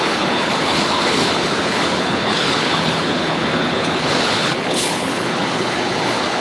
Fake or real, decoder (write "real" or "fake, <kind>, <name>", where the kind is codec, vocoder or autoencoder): fake, codec, HILCodec